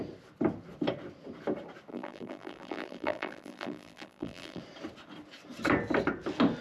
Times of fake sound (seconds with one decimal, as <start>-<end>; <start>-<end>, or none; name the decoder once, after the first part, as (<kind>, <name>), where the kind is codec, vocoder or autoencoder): 1.9-4.6 (vocoder, BigVGAN v2)